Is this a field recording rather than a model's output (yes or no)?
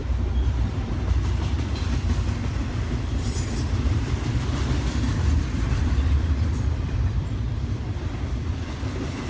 no